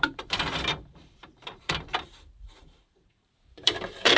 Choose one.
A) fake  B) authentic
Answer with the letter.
A